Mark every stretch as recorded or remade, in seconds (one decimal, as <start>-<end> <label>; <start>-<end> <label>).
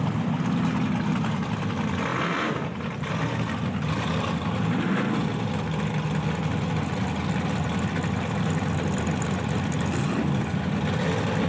0.0-11.5 recorded